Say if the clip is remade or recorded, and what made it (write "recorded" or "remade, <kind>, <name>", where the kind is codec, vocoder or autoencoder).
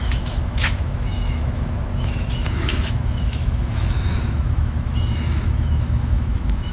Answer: remade, autoencoder, DAC-VAE